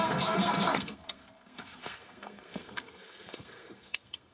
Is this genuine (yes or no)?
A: no